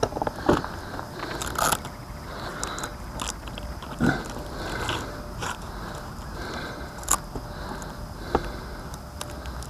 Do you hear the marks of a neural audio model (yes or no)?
no